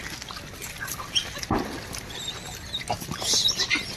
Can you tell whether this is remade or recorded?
recorded